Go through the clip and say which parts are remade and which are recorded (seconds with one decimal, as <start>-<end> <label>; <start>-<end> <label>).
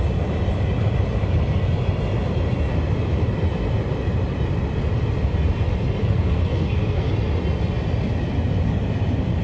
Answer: 0.0-6.0 recorded; 6.0-7.1 remade; 7.1-9.4 recorded